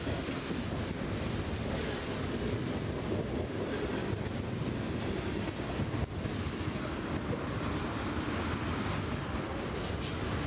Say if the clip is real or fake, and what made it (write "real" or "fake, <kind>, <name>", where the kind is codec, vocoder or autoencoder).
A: real